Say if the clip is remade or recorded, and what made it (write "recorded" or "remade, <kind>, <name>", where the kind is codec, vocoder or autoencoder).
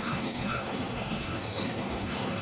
remade, codec, SNAC